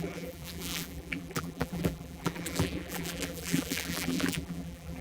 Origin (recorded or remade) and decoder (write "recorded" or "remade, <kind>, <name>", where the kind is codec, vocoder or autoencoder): remade, vocoder, BigVGAN v2